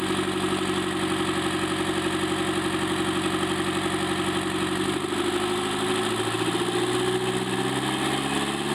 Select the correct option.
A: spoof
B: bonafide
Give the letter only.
B